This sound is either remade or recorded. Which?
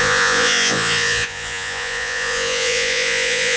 remade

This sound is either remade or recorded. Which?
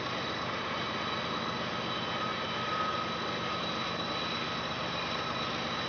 recorded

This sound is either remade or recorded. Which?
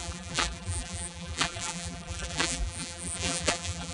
remade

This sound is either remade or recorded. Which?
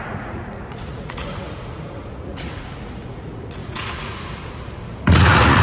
remade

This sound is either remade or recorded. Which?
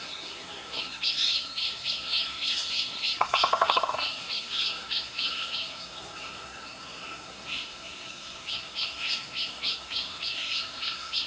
remade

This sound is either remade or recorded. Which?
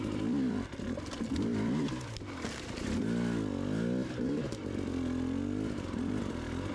remade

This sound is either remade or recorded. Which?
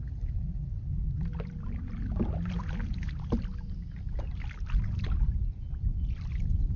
recorded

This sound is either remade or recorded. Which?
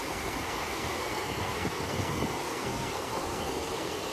remade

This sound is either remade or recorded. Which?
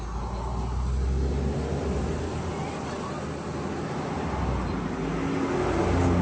recorded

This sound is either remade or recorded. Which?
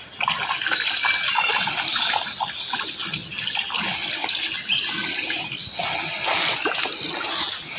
recorded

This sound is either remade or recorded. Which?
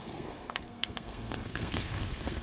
remade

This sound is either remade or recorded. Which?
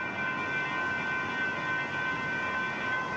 recorded